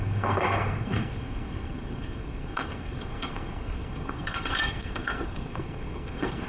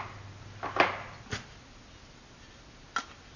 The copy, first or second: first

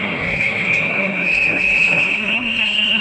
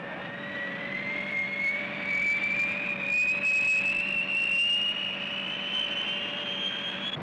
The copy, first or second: first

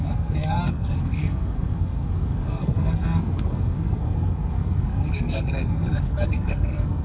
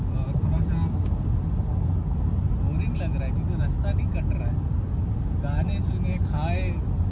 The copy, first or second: first